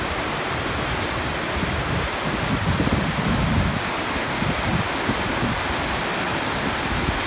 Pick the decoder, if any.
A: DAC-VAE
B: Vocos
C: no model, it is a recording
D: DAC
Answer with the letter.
C